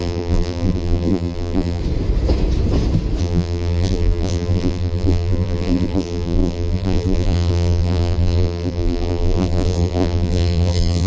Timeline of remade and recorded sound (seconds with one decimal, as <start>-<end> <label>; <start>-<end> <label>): 0.0-1.8 remade; 1.8-3.2 recorded; 3.2-11.1 remade